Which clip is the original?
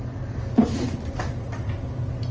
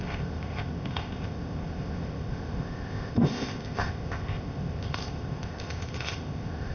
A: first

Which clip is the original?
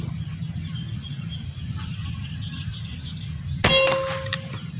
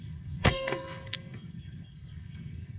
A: first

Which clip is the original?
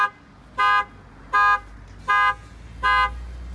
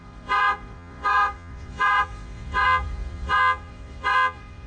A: first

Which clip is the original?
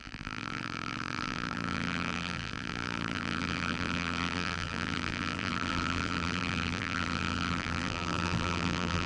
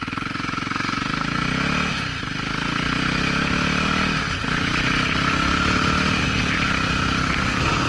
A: second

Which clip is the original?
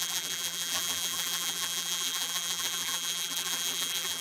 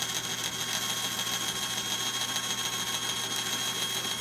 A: second